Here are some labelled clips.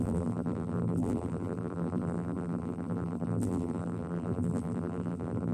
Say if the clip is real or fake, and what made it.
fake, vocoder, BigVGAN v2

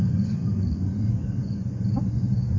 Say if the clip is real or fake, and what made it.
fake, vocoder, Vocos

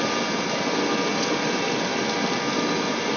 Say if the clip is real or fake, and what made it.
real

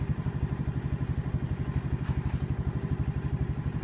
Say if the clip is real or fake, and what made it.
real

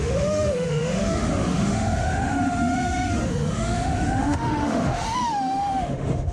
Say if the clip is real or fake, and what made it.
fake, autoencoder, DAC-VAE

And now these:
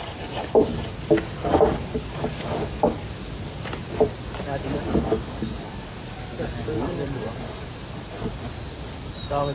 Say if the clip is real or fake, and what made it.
real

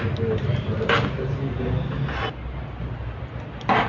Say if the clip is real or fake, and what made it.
real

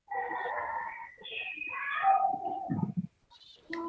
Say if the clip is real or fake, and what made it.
real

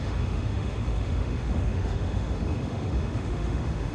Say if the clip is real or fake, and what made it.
fake, autoencoder, DAC-VAE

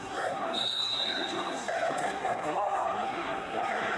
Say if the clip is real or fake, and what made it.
fake, codec, SNAC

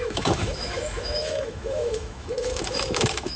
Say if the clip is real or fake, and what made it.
fake, autoencoder, DAC-VAE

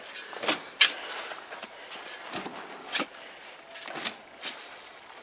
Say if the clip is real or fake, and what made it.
real